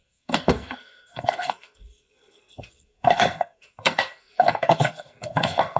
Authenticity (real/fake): fake